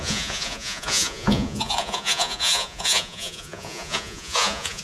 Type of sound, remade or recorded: remade